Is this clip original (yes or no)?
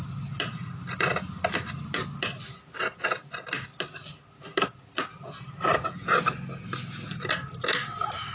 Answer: yes